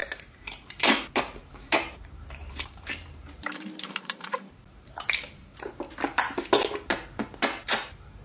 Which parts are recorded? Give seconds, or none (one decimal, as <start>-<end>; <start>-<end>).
0.8-1.4; 5.9-8.2